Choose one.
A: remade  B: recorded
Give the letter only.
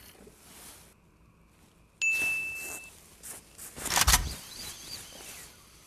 B